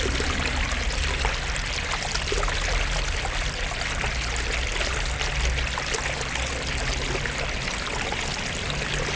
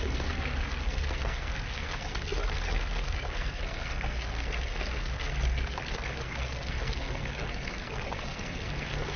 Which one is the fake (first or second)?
second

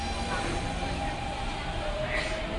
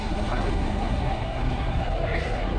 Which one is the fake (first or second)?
second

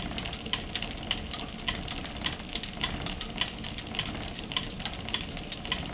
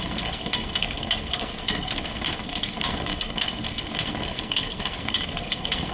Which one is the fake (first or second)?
second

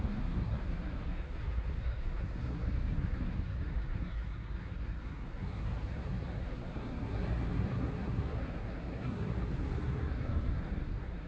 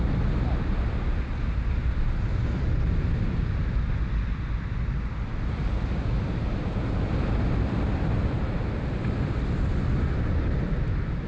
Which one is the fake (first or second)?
first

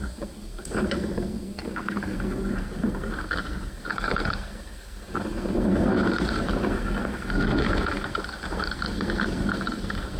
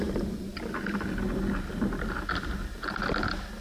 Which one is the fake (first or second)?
first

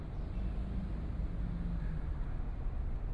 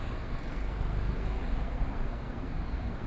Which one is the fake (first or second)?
second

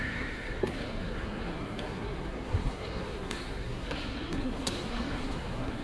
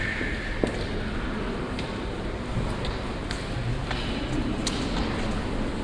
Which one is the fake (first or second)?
first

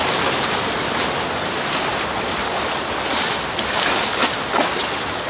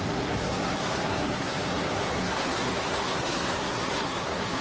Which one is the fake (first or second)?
second